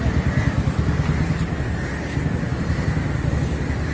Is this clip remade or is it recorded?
recorded